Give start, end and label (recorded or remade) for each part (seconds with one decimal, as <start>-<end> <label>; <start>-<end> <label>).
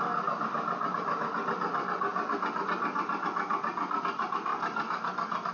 0.0-5.5 recorded